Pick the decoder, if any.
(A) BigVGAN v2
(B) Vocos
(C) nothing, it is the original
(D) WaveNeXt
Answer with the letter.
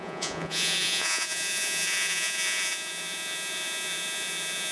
B